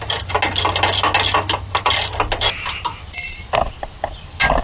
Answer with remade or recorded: recorded